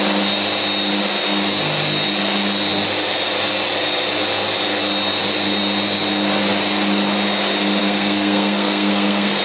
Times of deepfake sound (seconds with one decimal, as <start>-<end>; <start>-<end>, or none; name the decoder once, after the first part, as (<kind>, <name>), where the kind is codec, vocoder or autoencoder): 7.8-9.4 (codec, SNAC)